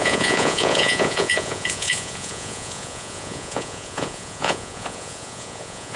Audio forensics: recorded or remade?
remade